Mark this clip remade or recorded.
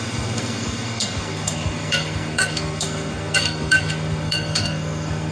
remade